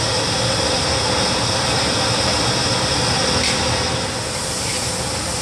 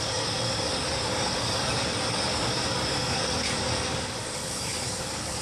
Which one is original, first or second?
first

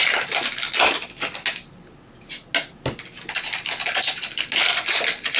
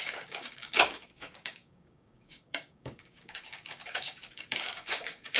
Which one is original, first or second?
first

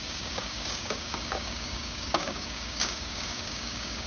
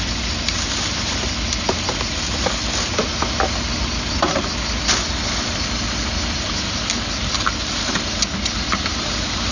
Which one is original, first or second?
second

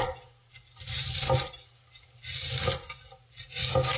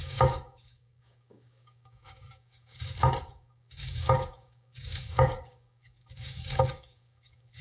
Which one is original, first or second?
first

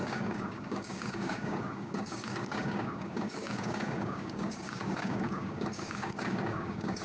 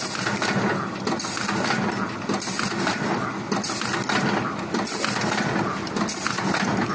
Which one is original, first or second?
second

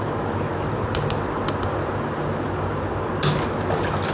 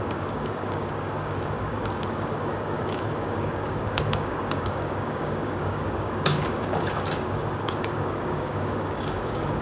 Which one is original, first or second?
first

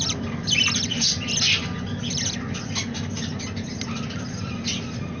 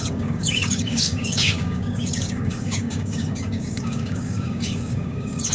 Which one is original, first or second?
first